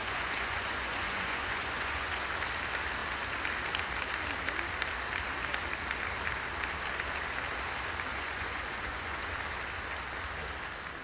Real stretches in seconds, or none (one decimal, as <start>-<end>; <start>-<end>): 2.1-8.1; 9.2-11.0